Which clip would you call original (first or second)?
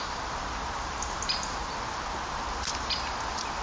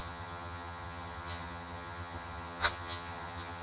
first